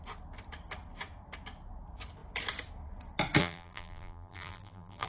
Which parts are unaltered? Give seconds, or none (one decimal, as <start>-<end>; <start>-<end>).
0.0-3.4